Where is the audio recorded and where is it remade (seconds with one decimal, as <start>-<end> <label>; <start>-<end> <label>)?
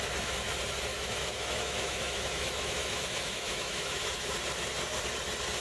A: 0.0-0.9 recorded; 0.9-4.3 remade; 4.3-5.6 recorded